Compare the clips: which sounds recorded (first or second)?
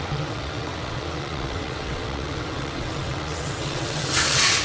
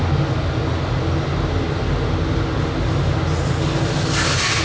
second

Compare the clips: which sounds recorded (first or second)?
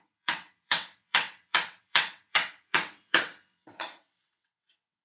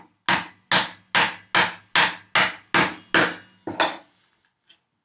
second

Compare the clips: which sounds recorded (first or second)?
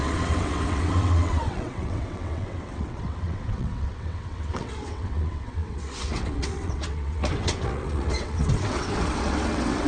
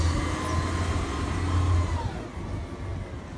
second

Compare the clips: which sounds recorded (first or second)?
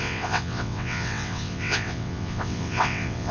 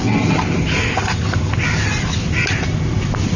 second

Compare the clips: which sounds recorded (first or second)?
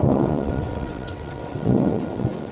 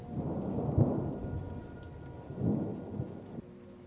second